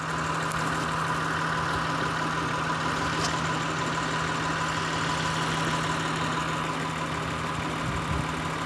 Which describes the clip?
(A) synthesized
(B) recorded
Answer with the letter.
B